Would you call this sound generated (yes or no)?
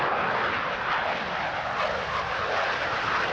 no